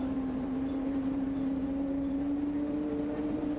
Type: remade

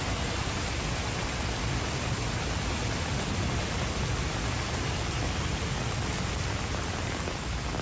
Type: recorded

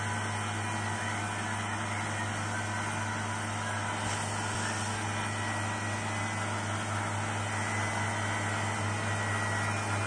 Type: recorded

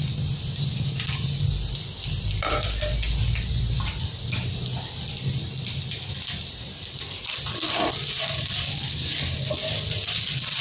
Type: recorded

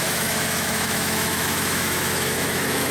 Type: remade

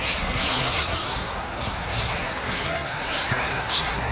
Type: remade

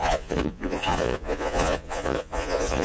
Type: remade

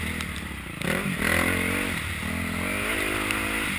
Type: recorded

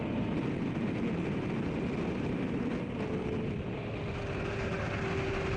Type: recorded